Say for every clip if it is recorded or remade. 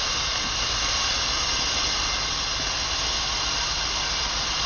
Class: recorded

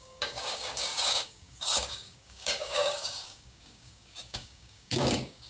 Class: remade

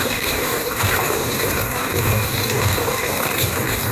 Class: remade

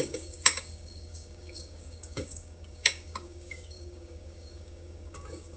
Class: remade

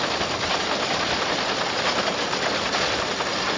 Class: recorded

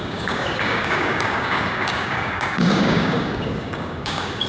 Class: remade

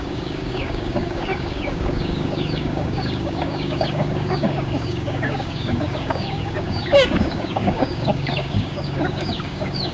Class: remade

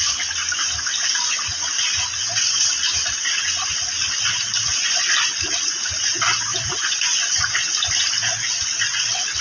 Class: recorded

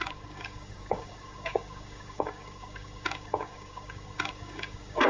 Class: remade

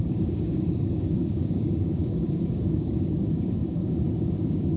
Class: remade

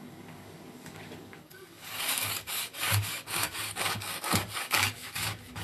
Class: remade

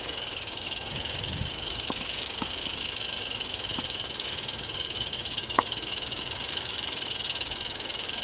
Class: remade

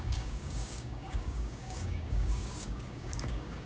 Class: remade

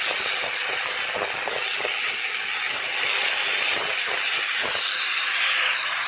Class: recorded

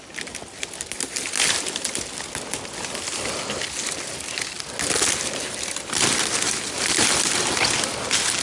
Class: recorded